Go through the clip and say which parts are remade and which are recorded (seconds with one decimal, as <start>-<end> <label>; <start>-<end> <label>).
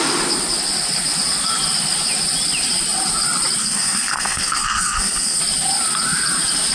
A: 0.0-3.6 recorded; 3.6-5.4 remade; 5.4-6.7 recorded